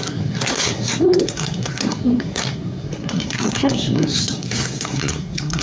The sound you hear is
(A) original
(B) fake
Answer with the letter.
B